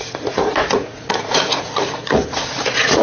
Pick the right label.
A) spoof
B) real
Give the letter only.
A